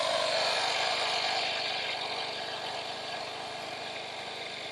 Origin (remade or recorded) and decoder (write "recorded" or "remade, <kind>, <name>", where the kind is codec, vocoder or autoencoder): remade, vocoder, Vocos